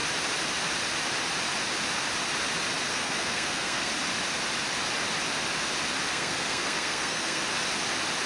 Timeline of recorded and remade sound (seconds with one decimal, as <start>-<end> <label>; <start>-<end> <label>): 0.0-2.9 recorded; 2.9-3.9 remade; 3.9-6.1 recorded; 6.1-7.4 remade; 7.4-8.3 recorded